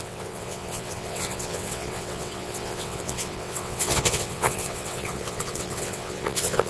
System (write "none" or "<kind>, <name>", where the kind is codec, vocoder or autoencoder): vocoder, WaveNeXt